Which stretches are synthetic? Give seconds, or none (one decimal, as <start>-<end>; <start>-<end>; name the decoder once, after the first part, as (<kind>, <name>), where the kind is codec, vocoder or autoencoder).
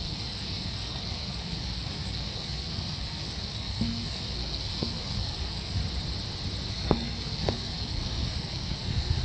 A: 0.0-5.8 (codec, SNAC); 6.7-9.2